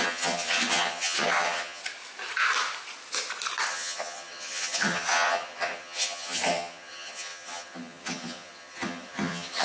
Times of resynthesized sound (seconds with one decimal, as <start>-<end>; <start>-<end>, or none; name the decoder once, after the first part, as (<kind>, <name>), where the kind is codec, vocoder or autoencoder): 0.0-1.8 (vocoder, HiFi-GAN); 3.7-9.6